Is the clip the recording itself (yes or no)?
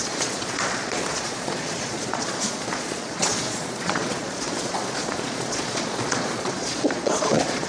no